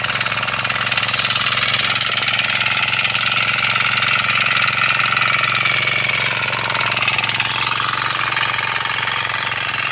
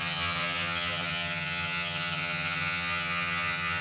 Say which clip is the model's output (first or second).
second